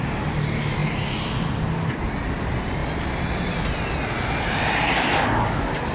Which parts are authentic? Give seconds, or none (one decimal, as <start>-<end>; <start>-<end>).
0.0-5.9